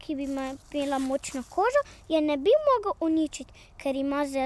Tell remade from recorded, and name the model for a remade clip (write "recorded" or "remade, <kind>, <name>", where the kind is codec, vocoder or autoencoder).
recorded